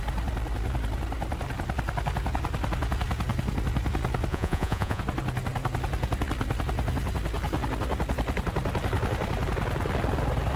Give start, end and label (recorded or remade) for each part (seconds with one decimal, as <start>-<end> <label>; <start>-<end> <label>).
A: 0.0-4.3 recorded; 4.3-5.0 remade; 5.0-10.6 recorded